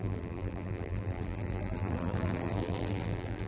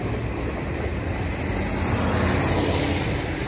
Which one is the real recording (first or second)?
second